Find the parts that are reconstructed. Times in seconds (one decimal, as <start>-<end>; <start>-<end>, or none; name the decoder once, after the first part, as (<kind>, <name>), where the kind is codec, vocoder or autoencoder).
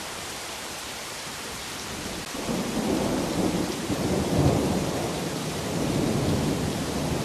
0.0-1.6 (vocoder, BigVGAN v2); 3.8-7.2